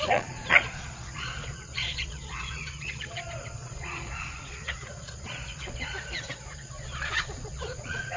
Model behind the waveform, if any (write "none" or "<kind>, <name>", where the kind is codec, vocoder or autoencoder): vocoder, Vocos